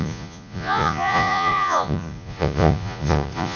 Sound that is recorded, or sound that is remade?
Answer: remade